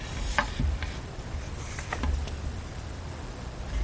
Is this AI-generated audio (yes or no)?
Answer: no